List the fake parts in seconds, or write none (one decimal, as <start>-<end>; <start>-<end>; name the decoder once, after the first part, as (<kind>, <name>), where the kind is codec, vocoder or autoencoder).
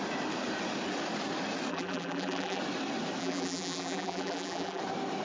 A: 1.7-2.6 (vocoder, BigVGAN v2); 3.2-4.8